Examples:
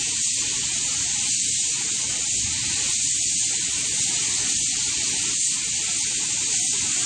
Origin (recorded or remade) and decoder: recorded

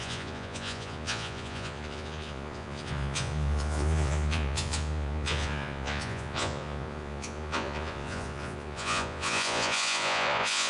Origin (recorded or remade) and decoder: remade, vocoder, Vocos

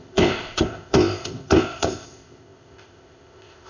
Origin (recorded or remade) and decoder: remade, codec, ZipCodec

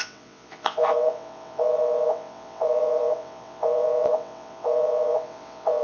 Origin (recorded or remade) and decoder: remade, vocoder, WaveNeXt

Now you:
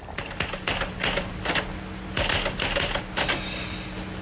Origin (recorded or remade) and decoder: recorded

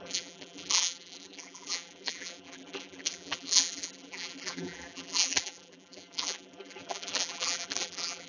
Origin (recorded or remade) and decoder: remade, vocoder, BigVGAN v2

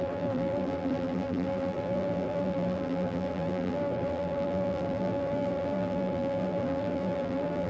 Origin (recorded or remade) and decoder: remade, vocoder, BigVGAN v2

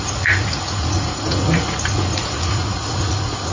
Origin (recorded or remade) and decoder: remade, vocoder, Vocos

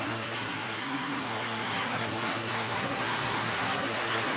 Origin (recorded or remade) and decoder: remade, codec, SNAC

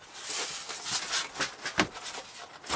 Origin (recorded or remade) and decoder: recorded